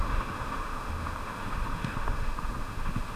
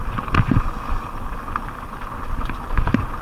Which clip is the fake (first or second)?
first